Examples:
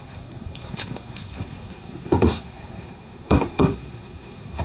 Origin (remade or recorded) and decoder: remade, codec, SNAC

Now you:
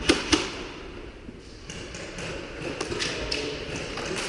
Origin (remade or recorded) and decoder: recorded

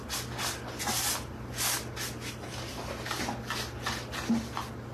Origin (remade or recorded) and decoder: recorded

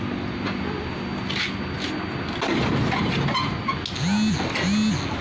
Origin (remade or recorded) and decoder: recorded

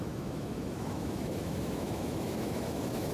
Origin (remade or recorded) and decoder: remade, autoencoder, DAC-VAE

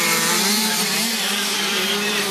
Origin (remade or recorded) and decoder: remade, vocoder, BigVGAN v2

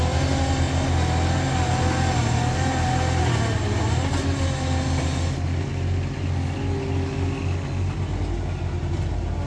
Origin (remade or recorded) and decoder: recorded